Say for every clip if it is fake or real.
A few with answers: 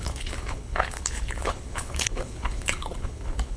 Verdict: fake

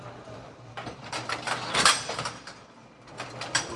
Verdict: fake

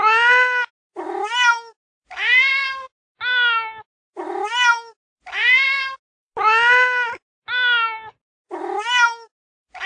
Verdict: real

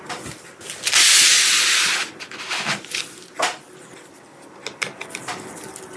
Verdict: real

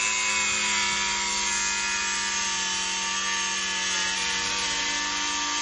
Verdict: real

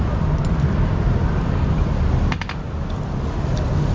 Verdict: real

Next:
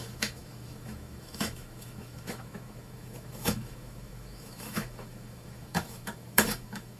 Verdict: fake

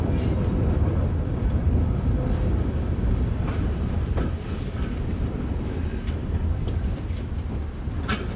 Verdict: real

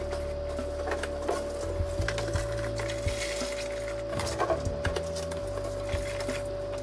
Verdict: real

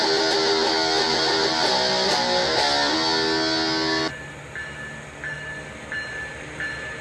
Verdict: real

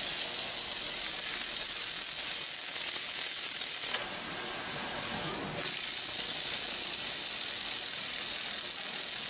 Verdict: real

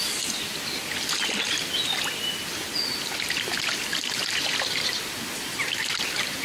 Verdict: real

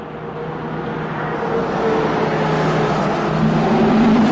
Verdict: real